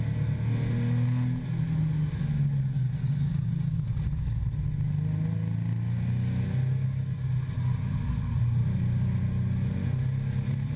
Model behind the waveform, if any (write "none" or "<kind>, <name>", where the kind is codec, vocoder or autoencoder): none